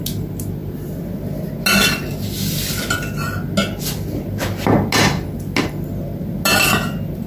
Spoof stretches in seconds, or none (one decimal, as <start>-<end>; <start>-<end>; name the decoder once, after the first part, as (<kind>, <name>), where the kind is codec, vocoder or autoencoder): none